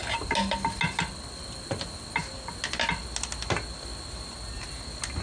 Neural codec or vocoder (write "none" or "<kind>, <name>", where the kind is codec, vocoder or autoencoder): none